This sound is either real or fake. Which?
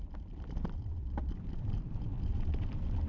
real